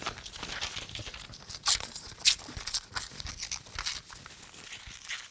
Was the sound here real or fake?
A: real